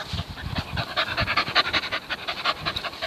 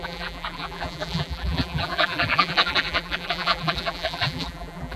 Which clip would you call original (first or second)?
first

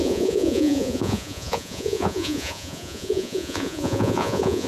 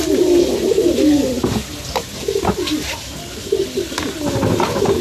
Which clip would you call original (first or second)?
second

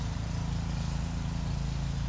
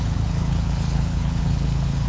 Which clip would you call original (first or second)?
first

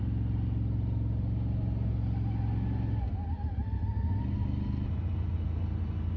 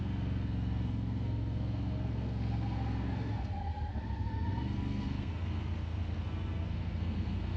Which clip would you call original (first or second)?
first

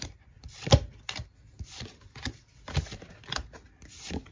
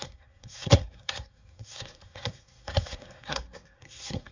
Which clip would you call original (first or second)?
first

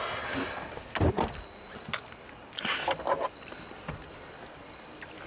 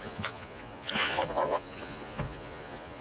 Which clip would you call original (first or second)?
first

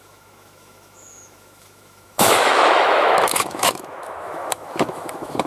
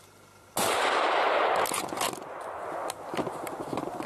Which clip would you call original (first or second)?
second